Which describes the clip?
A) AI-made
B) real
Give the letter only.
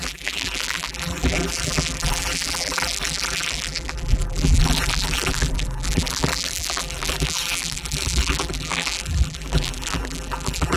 A